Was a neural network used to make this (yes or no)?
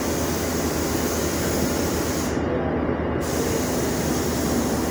no